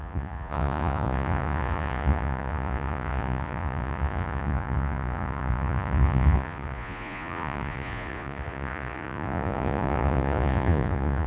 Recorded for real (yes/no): no